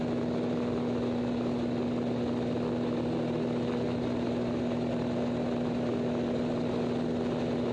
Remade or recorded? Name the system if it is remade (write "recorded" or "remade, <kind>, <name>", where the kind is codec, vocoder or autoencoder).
recorded